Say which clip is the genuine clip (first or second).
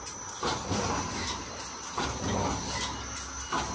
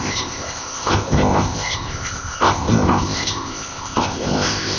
first